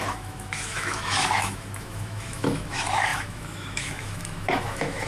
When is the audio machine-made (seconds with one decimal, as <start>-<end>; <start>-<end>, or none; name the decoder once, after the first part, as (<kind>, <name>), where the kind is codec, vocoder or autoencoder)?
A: 0.0-5.1 (autoencoder, DAC-VAE)